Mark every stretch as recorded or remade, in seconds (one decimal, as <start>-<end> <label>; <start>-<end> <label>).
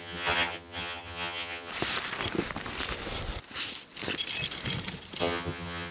0.0-1.7 remade; 1.7-5.2 recorded; 5.2-5.9 remade